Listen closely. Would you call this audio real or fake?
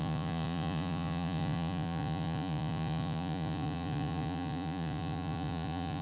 fake